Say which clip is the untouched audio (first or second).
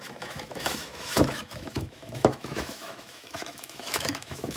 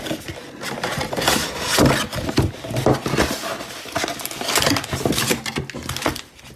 second